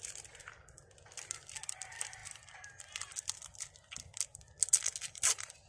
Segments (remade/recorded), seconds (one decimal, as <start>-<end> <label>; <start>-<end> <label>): 0.0-5.7 recorded